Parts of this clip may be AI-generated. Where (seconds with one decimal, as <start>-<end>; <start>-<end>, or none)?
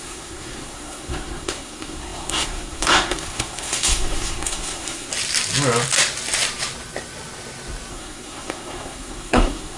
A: 0.0-5.1; 7.9-9.8